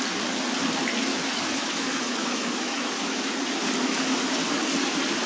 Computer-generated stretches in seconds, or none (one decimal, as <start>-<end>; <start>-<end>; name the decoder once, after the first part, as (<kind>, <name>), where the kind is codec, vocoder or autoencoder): 1.1-3.3 (autoencoder, DAC-VAE)